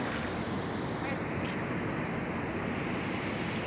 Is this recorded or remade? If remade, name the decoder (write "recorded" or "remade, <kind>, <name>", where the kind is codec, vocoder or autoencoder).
recorded